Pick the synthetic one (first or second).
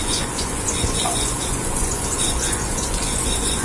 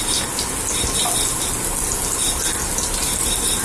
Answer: first